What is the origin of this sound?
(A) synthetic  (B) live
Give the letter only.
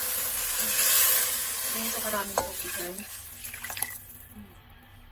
B